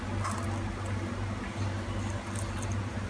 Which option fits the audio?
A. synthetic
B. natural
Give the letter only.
B